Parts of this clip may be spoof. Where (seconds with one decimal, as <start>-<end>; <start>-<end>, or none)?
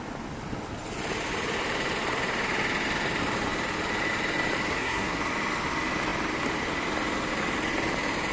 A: 4.7-5.2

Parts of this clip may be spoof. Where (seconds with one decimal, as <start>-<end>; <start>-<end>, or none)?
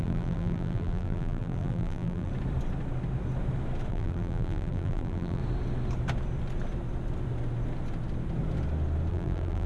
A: 0.0-2.3; 3.9-5.4; 9.1-9.7